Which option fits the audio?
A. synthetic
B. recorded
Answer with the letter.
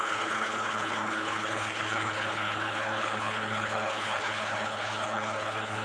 A